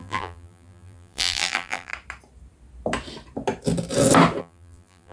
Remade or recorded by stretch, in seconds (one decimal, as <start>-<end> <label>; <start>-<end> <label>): 0.0-1.9 remade; 1.9-4.4 recorded; 4.4-5.1 remade